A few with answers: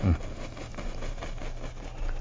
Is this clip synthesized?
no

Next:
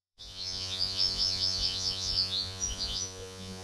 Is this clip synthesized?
yes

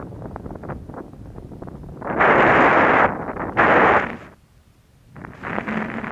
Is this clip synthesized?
no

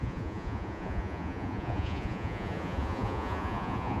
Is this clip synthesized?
yes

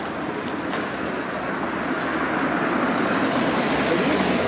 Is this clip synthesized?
no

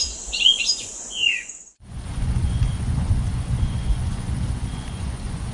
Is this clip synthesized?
yes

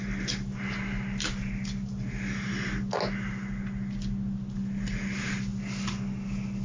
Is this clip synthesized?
no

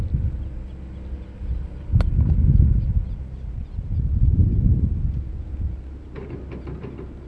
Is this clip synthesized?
no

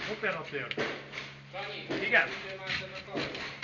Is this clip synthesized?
no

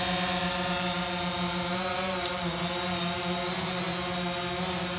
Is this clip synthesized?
no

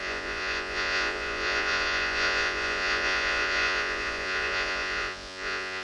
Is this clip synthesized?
yes